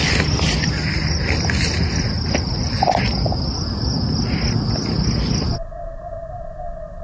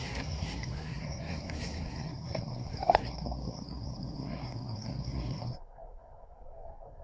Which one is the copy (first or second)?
second